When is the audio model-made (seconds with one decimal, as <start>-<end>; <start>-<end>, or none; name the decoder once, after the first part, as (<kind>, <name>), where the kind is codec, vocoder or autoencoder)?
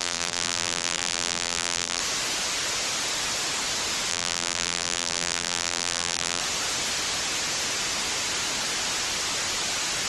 0.0-2.0 (vocoder, BigVGAN v2); 4.1-6.4